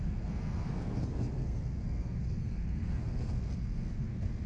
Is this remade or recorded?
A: remade